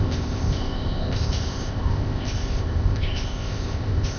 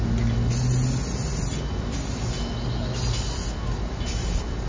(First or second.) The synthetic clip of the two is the first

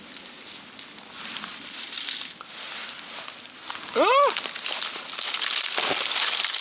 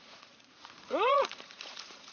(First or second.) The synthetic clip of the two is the second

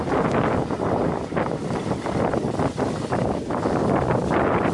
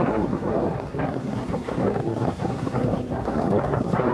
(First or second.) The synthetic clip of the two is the second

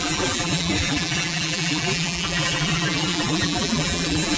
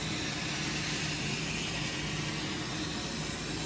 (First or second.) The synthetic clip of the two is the first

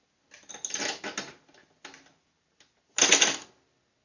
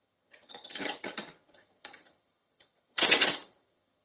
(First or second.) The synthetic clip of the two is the second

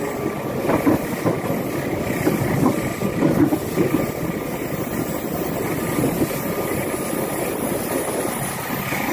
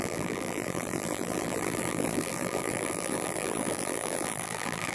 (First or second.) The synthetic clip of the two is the second